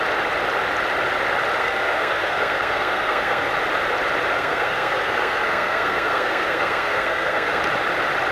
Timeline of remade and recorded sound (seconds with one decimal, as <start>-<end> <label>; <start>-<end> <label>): 0.0-1.6 recorded; 1.6-3.5 remade; 3.5-4.3 recorded; 4.3-7.6 remade; 7.6-8.3 recorded